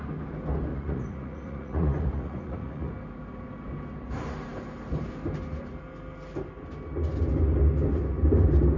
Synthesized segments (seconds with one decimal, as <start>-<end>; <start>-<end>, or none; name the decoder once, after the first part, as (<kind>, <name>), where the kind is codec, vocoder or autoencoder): 0.7-2.9 (vocoder, Vocos)